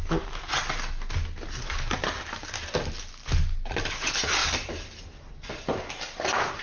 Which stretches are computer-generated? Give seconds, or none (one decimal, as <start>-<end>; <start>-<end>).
none